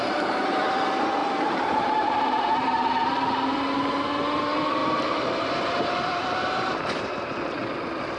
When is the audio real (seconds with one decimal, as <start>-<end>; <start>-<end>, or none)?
0.0-1.2; 2.1-4.8; 7.3-8.2